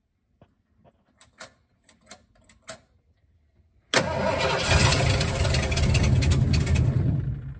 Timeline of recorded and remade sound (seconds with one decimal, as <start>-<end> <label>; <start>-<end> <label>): 0.0-7.6 recorded